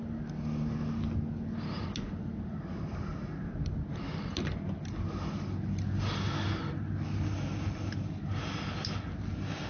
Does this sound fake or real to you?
real